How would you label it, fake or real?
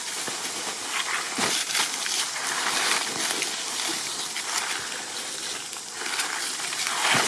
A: real